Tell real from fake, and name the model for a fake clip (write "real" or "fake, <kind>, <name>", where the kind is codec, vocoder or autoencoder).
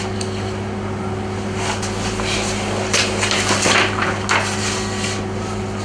real